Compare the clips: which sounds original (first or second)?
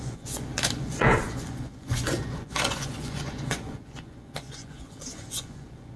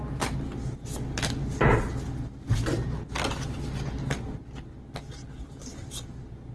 second